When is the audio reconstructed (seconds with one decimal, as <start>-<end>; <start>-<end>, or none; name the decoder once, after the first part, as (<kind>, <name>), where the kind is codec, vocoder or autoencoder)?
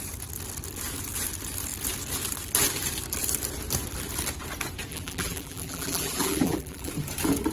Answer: 4.9-6.9 (vocoder, BigVGAN v2)